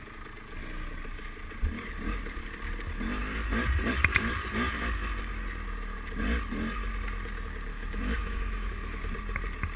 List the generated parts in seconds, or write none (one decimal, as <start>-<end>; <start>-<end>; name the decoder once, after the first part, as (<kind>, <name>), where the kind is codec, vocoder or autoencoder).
7.7-8.7 (autoencoder, DAC-VAE)